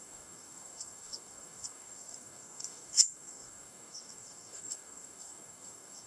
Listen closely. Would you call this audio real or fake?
fake